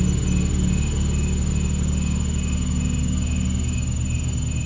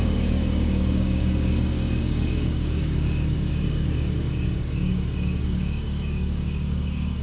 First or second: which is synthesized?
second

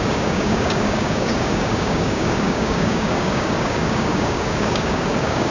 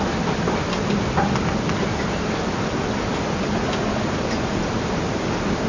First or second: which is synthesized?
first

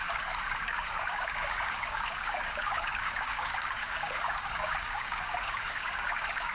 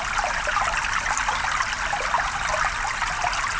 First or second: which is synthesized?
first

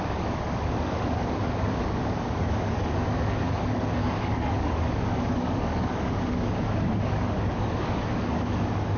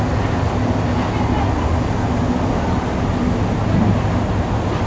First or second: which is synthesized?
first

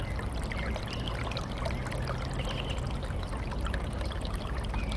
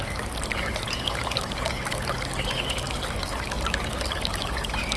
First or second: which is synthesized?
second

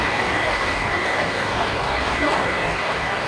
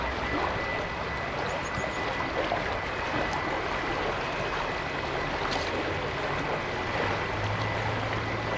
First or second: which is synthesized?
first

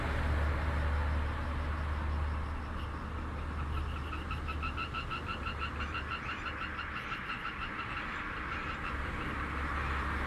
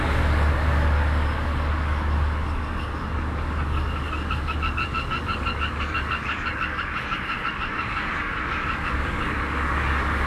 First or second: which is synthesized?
second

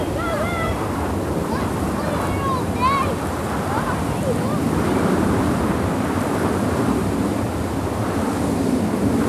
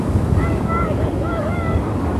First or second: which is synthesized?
second